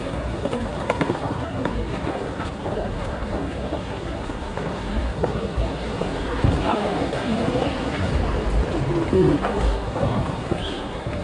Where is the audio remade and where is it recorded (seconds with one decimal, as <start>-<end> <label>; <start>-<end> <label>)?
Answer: 0.0-8.1 remade; 8.1-9.1 recorded; 9.1-11.2 remade